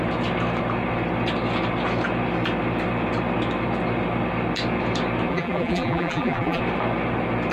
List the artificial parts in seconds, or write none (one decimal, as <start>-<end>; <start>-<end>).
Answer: 5.3-6.6